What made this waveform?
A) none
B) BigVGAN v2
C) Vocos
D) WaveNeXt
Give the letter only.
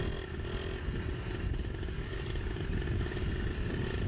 A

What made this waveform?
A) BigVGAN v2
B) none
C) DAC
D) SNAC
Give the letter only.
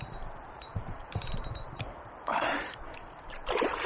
A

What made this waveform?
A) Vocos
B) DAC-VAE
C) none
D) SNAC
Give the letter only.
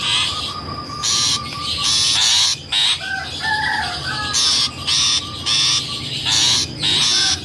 C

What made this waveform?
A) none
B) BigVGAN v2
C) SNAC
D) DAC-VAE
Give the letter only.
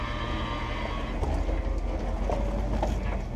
A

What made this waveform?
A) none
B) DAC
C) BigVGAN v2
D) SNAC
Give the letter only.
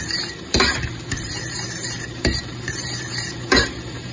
C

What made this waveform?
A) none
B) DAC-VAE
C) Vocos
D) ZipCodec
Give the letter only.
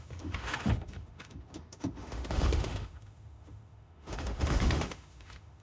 B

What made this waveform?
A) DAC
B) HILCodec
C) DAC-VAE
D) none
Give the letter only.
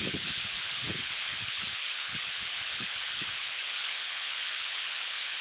B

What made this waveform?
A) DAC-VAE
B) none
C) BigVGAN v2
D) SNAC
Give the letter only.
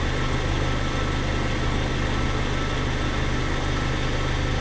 B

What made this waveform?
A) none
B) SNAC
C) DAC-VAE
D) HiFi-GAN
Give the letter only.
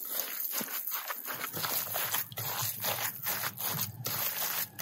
A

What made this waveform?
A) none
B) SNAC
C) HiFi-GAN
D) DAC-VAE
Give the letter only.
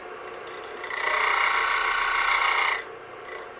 A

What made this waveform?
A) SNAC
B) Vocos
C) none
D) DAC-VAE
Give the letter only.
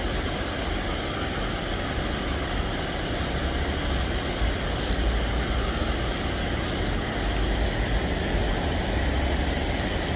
C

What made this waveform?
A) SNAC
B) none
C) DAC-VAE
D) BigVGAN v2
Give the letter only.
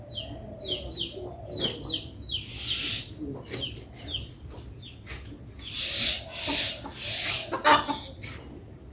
B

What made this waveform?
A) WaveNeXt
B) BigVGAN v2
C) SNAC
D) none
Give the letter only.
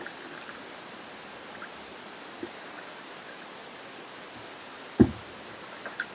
D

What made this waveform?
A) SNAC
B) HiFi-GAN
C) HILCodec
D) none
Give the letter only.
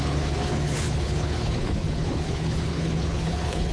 C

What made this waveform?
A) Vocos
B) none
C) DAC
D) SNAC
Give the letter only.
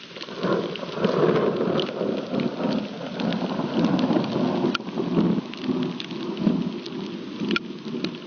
B